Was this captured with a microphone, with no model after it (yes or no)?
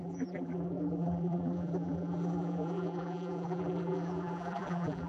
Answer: no